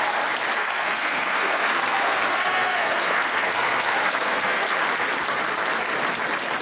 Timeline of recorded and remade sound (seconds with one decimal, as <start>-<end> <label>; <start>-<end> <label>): 0.0-0.6 recorded; 0.6-4.6 remade; 4.6-6.6 recorded